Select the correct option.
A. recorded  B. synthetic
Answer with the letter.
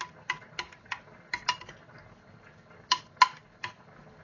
A